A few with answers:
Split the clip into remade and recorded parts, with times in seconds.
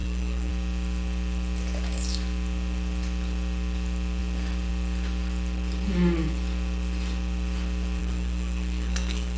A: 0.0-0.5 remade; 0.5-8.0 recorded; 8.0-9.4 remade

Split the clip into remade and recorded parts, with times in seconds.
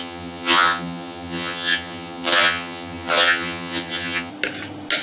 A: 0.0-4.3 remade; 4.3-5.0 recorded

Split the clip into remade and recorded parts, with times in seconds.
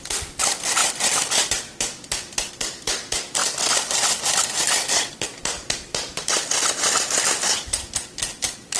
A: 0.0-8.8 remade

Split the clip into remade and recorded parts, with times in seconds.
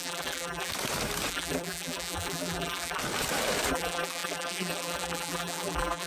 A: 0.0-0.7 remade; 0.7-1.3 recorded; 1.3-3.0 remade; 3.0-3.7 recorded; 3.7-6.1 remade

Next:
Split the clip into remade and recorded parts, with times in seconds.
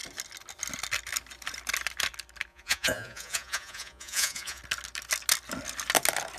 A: 0.0-2.5 recorded; 2.5-4.6 remade; 4.6-6.4 recorded